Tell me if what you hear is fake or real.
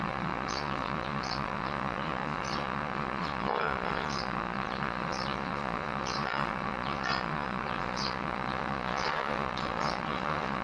fake